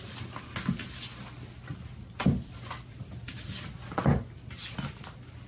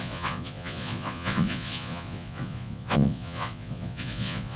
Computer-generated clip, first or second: second